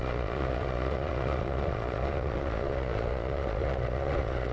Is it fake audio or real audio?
fake